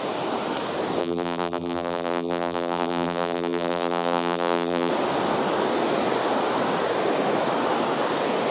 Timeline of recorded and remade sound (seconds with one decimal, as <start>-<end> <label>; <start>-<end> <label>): 0.0-1.0 recorded; 1.0-4.9 remade; 4.9-8.5 recorded